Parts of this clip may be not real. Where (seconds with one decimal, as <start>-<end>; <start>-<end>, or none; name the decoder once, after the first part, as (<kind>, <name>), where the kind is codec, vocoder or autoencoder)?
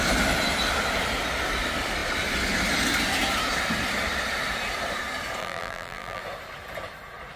5.4-6.2 (vocoder, BigVGAN v2)